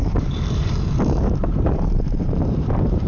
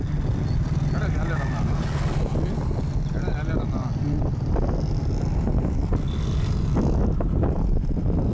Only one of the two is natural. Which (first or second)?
second